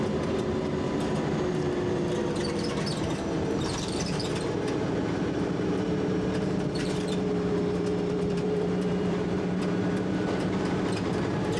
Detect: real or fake fake